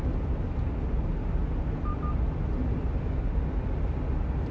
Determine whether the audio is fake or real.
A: real